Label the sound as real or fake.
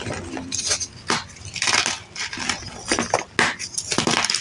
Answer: real